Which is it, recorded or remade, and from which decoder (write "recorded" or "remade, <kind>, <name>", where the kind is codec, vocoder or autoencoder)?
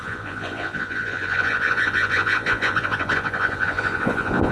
remade, vocoder, Vocos